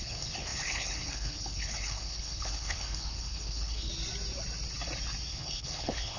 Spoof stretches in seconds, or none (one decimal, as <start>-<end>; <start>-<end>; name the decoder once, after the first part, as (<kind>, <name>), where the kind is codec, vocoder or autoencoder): 0.0-3.9 (codec, HILCodec); 5.3-6.2